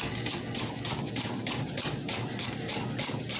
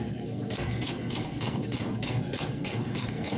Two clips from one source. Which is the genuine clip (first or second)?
first